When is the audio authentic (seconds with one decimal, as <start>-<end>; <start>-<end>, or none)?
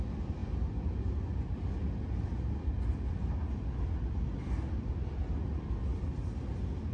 0.0-6.9